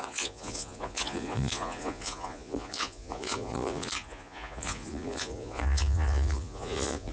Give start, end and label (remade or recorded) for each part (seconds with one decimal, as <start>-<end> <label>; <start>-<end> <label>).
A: 0.0-7.1 remade

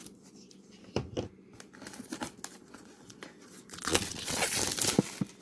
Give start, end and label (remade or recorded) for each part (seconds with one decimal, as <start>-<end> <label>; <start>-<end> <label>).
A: 0.0-2.6 recorded; 2.6-4.6 remade; 4.6-5.4 recorded

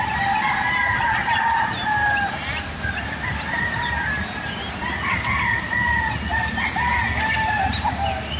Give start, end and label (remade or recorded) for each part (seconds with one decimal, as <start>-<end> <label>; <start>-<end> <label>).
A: 0.0-8.4 recorded